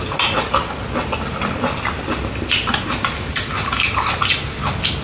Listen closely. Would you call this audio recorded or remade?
recorded